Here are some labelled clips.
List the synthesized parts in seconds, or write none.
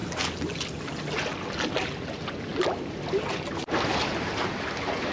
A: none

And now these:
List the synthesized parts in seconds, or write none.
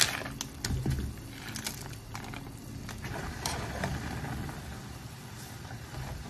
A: 3.8-6.3 (vocoder, BigVGAN v2)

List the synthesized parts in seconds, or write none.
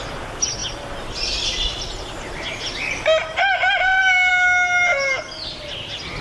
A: none